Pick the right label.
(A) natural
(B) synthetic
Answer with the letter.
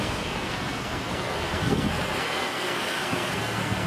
B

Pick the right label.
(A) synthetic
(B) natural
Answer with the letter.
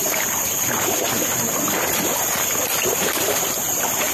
B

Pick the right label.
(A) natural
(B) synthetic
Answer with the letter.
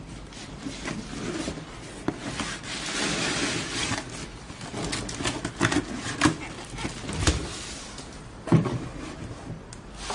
A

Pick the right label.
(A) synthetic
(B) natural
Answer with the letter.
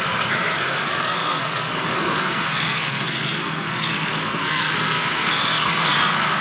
A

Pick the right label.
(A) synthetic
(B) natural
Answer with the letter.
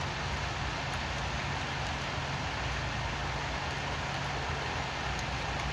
B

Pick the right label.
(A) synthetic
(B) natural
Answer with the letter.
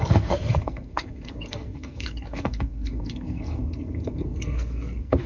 A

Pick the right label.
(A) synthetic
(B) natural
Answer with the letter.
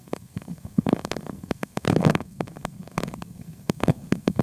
A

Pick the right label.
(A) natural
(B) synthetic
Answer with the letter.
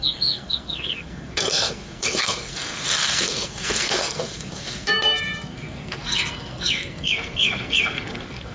B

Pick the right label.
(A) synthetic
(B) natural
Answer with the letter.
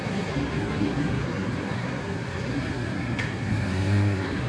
A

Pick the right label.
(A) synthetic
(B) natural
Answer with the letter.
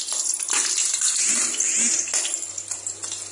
B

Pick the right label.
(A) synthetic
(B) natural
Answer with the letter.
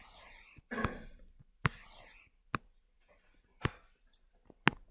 B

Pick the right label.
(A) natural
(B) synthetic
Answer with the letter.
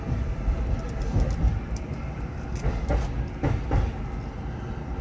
A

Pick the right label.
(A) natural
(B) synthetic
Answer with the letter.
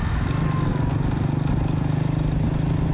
A